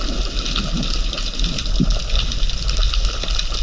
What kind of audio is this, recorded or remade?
recorded